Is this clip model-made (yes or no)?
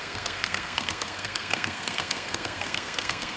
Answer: yes